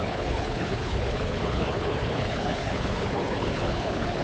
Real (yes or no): no